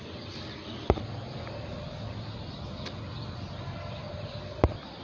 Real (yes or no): yes